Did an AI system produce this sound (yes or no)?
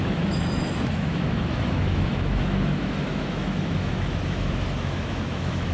yes